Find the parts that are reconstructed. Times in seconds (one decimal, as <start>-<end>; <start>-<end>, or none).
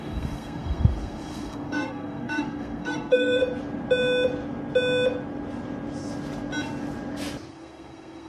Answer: 0.0-3.4; 7.5-8.3